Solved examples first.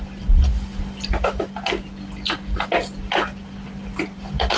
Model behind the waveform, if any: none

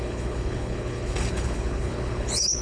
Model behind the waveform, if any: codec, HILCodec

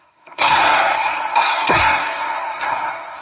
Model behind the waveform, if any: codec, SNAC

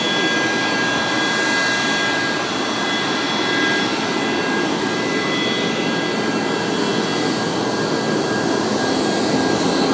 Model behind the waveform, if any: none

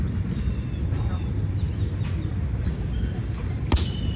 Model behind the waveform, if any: vocoder, BigVGAN v2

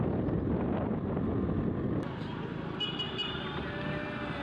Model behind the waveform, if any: none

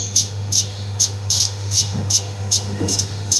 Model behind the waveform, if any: autoencoder, DAC-VAE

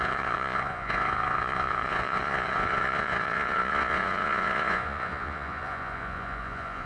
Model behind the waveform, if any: vocoder, Vocos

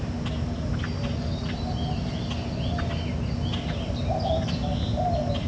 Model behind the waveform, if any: none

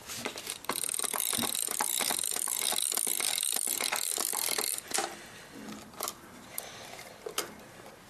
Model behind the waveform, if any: none